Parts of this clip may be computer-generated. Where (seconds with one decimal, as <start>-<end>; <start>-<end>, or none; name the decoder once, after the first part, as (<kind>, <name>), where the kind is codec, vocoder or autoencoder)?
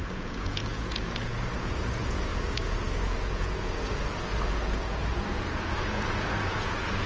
0.0-7.1 (vocoder, Vocos)